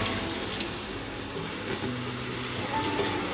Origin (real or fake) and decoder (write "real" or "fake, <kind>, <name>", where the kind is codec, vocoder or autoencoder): real